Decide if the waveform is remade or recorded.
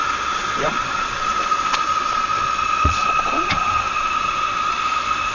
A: remade